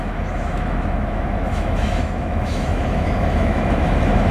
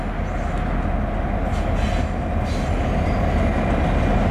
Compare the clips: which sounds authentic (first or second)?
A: second